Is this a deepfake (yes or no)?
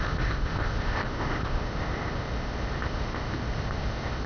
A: yes